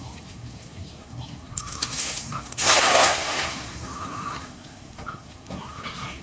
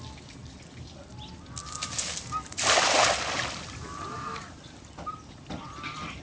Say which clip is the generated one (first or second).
first